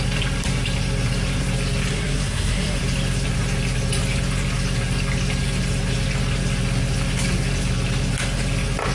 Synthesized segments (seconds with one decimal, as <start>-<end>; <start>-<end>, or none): 1.9-2.8